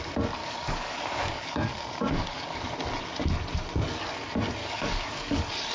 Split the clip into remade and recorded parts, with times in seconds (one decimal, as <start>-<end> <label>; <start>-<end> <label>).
0.0-0.4 recorded; 0.4-2.7 remade; 2.7-4.6 recorded; 4.6-5.7 remade